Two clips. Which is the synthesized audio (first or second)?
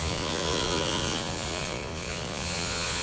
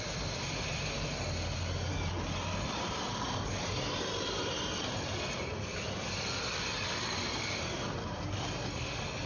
first